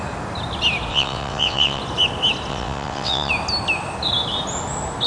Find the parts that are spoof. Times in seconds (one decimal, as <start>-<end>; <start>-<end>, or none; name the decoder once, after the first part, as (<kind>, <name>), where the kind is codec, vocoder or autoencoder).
0.9-1.8 (vocoder, WaveNeXt); 2.5-3.3